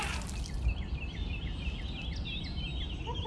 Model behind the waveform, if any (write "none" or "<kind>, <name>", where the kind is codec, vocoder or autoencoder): none